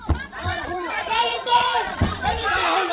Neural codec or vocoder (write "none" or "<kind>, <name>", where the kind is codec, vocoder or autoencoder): vocoder, Vocos